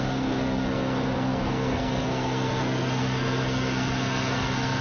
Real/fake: fake